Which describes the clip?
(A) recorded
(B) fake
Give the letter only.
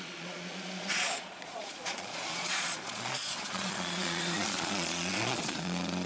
B